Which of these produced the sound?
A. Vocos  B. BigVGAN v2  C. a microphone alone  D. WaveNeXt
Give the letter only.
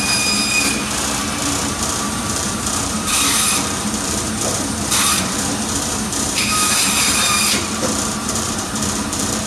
B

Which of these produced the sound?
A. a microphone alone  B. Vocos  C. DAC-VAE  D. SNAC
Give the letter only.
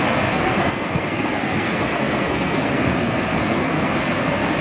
D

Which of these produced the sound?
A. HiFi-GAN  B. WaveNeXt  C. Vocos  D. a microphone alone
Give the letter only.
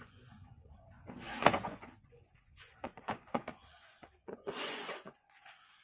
C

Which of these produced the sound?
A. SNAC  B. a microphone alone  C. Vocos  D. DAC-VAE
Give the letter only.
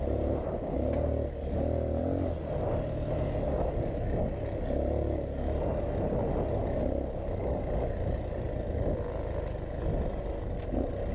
B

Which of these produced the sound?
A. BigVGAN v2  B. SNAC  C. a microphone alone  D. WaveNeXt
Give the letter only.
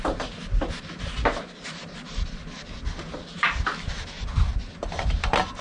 C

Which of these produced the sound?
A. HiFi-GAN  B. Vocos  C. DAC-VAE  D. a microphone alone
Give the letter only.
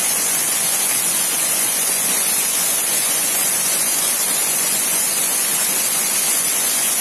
B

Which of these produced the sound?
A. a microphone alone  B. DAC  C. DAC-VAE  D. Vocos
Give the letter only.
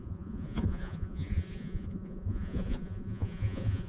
D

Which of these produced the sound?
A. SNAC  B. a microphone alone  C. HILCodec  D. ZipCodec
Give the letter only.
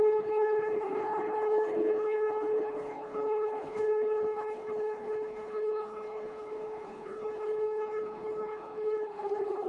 C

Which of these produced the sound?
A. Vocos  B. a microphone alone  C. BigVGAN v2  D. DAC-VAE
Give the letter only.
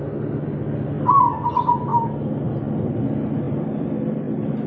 B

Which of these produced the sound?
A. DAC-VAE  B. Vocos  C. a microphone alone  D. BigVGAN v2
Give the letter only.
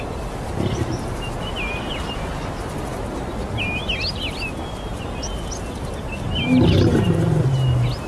C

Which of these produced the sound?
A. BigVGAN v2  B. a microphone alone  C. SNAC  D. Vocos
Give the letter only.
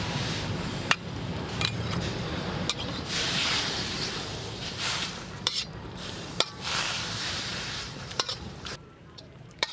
A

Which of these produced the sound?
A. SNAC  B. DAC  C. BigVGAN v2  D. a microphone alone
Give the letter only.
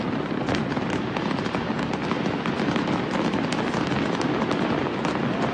D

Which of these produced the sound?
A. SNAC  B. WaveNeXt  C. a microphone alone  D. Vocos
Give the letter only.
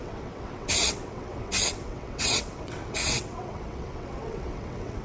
B